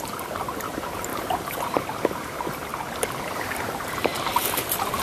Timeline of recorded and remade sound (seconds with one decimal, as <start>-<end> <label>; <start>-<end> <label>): 0.0-2.7 remade; 2.7-3.4 recorded; 3.4-4.1 remade; 4.1-5.0 recorded